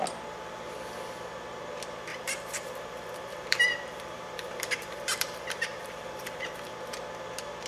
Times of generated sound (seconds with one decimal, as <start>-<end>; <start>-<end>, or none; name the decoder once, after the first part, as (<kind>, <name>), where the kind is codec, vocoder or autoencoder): 2.1-6.7 (vocoder, BigVGAN v2)